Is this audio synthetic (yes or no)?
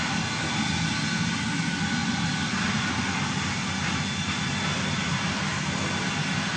no